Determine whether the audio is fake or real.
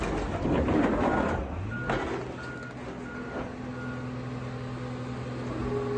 real